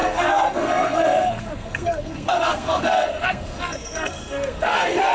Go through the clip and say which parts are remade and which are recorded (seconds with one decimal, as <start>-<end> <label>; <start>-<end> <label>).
0.0-5.1 remade